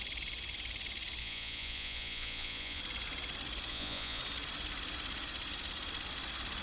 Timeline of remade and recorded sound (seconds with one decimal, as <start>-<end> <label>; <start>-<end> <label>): 0.0-1.2 recorded; 1.2-2.8 remade; 2.8-3.7 recorded; 3.7-4.2 remade; 4.2-6.6 recorded